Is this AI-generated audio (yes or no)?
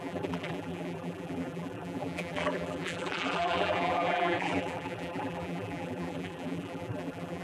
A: yes